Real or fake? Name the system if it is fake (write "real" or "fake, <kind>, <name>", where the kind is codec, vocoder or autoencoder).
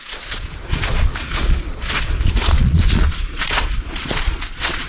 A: fake, vocoder, Vocos